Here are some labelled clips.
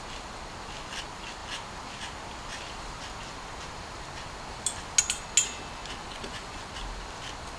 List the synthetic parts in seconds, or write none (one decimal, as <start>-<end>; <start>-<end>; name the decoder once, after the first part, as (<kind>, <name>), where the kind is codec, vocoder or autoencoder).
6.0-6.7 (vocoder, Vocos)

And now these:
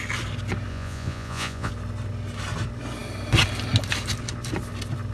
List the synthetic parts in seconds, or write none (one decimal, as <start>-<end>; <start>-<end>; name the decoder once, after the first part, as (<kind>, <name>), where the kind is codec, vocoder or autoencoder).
0.7-1.7 (vocoder, Vocos)

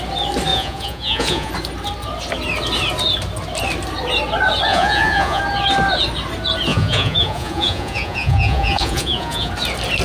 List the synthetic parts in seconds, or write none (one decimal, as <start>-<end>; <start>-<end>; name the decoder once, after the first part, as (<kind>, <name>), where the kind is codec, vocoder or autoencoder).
0.5-1.5 (vocoder, Vocos); 4.7-5.4; 6.7-9.5

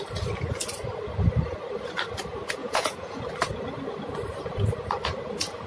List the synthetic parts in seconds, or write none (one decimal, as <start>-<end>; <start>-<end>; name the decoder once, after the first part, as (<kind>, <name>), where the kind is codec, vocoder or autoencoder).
2.6-3.2 (vocoder, Vocos)

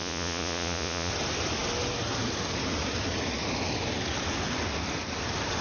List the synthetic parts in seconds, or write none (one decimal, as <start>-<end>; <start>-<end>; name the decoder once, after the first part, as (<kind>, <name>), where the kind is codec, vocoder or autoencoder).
0.0-1.1 (vocoder, Vocos)

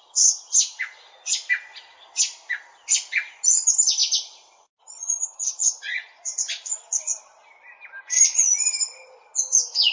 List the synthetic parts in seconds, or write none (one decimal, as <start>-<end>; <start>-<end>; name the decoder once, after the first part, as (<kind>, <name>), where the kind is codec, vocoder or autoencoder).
none

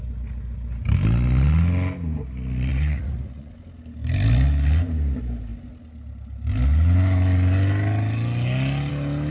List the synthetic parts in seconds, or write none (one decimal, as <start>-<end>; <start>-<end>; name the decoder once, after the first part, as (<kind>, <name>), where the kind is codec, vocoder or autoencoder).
2.7-3.5 (vocoder, Vocos)

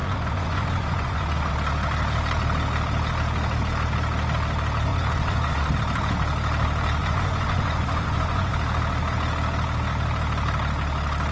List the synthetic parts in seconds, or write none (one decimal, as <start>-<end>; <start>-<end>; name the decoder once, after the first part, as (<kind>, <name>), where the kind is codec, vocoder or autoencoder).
0.0-1.5 (vocoder, Vocos); 4.9-5.7; 7.0-8.5